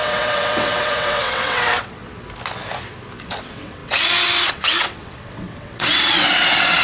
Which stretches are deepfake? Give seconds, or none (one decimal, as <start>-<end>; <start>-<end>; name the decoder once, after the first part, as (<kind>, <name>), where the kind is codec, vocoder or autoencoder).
0.0-2.0 (vocoder, WaveNeXt); 3.2-6.8